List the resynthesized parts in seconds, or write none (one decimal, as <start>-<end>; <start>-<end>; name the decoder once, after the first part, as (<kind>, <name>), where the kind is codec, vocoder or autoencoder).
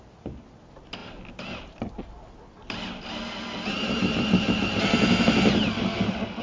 none